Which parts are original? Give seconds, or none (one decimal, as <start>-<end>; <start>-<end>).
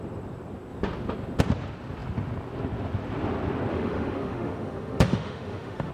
0.0-3.7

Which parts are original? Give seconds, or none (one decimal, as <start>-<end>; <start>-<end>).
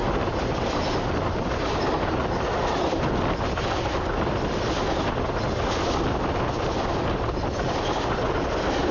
0.0-2.6; 3.2-8.9